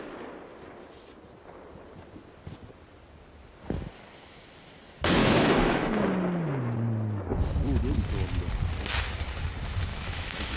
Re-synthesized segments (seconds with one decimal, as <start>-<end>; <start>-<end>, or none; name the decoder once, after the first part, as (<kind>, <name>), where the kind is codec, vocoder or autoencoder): 5.2-5.9 (autoencoder, DAC-VAE); 9.9-10.6